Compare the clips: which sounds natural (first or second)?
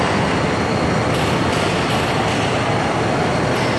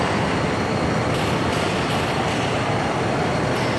first